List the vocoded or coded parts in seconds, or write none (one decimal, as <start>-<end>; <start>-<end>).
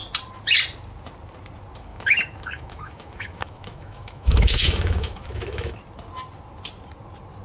1.9-5.7